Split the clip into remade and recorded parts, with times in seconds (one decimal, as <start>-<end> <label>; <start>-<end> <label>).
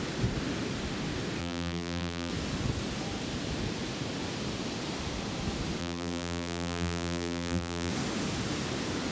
0.0-1.4 recorded; 1.4-2.3 remade; 2.3-5.8 recorded; 5.8-7.9 remade; 7.9-9.1 recorded